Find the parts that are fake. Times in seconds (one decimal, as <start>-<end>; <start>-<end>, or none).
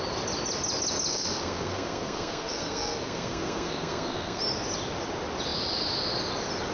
1.1-4.4